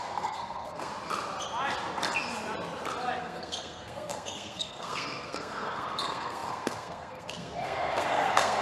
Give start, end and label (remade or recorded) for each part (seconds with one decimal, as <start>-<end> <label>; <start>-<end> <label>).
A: 0.0-0.9 remade; 0.9-3.2 recorded; 3.2-8.6 remade